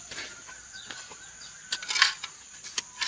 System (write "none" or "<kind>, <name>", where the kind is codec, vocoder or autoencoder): none